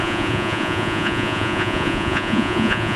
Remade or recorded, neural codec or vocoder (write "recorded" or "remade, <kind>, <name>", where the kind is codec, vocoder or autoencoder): remade, vocoder, Vocos